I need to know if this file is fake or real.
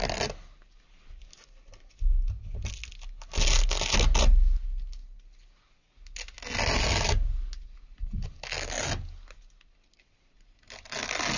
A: real